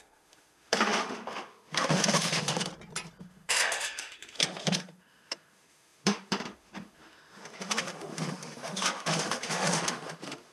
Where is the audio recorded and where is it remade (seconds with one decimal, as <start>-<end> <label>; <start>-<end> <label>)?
0.0-2.7 remade; 2.7-3.2 recorded; 3.2-10.5 remade